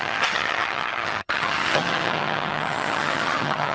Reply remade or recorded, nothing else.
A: remade